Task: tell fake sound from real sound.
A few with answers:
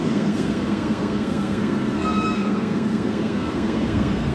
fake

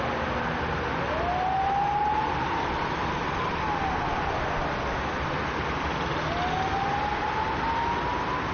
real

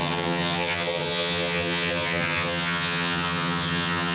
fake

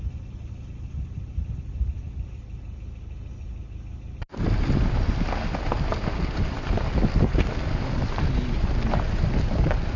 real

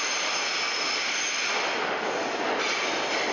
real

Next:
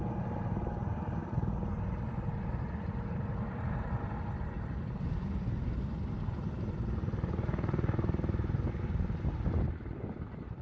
real